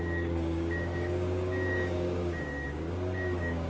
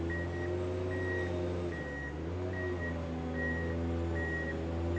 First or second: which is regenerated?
first